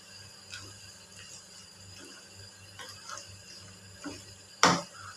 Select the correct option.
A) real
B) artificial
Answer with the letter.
A